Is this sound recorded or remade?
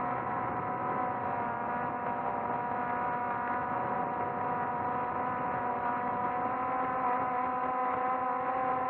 recorded